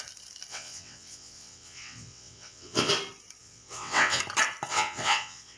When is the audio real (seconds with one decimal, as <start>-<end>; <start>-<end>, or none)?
0.0-0.5; 2.9-3.4; 4.2-4.7